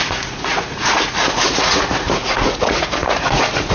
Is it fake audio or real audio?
fake